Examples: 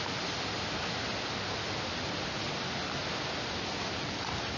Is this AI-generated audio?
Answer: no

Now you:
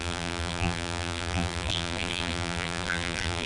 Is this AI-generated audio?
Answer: yes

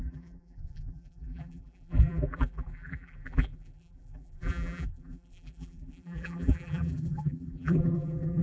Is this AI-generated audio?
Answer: yes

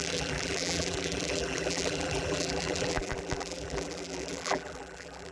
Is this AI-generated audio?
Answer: yes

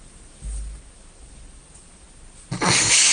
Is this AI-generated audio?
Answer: no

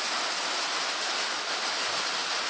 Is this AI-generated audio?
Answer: no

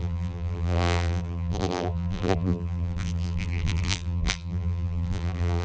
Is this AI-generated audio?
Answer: yes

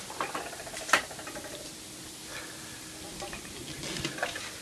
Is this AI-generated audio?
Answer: yes